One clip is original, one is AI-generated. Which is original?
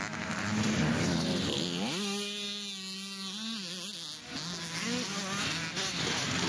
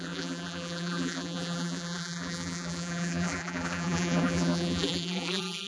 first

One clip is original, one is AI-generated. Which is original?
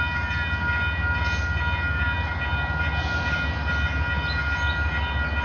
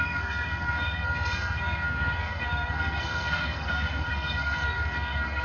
first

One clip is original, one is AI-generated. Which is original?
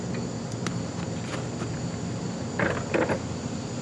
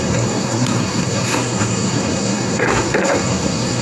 first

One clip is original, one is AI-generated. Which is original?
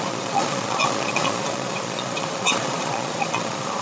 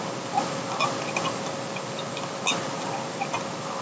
second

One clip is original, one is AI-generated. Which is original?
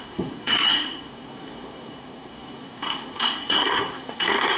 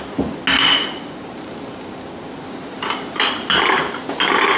second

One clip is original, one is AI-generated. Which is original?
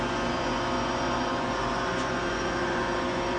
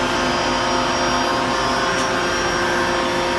second